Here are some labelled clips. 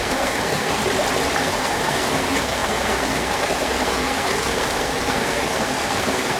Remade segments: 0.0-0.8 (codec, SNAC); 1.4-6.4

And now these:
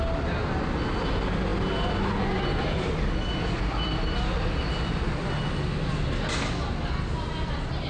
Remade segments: none

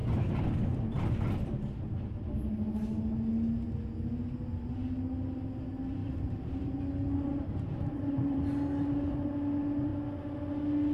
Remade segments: 6.0-6.8 (vocoder, BigVGAN v2); 7.3-8.4

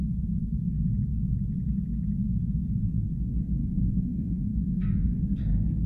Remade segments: 3.6-5.2 (codec, SNAC)

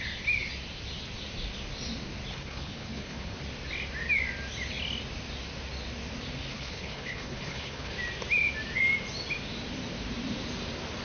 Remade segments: 2.3-3.4 (codec, HILCodec); 6.5-7.9

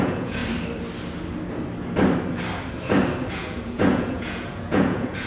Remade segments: 0.0-0.4 (vocoder, Vocos); 3.3-5.3

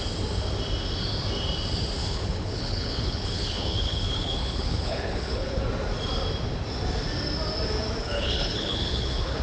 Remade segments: 2.0-5.6 (codec, HILCodec); 8.0-9.4

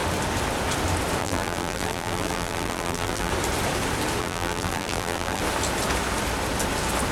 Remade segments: 1.2-3.3 (vocoder, BigVGAN v2); 4.2-5.4